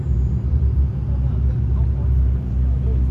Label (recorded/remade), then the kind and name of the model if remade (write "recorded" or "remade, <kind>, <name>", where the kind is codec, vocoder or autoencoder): recorded